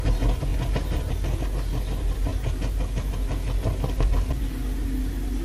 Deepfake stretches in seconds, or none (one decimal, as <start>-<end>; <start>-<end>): 0.5-1.1; 2.3-3.3